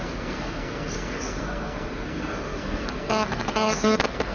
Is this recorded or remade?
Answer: remade